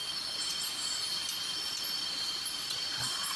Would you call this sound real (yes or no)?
yes